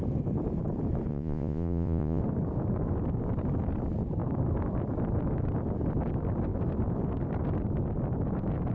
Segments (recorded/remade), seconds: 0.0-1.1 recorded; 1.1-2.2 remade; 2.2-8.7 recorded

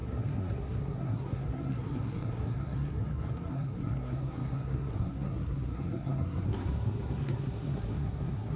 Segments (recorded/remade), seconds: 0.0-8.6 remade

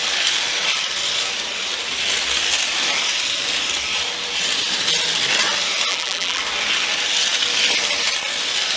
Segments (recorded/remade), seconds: 0.0-5.9 recorded; 5.9-6.4 remade; 6.4-8.8 recorded

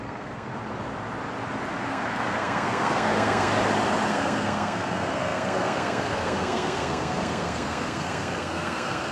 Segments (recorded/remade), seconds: 0.0-0.5 remade; 0.5-1.9 recorded; 1.9-3.5 remade; 3.5-4.1 recorded; 4.1-9.1 remade

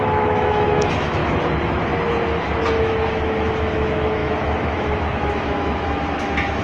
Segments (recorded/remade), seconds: 0.0-1.2 remade; 1.2-2.8 recorded; 2.8-6.6 remade

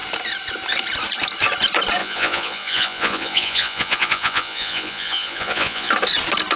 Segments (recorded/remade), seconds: 0.0-2.0 recorded; 2.0-5.9 remade; 5.9-6.6 recorded

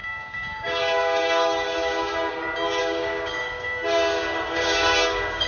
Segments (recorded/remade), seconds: 0.0-2.3 remade; 2.3-2.8 recorded; 2.8-5.5 remade